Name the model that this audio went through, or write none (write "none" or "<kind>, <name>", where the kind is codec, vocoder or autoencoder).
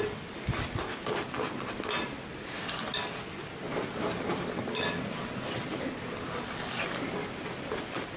none